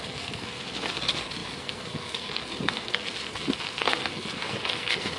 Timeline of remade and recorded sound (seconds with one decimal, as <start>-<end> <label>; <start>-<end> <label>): 0.0-5.2 remade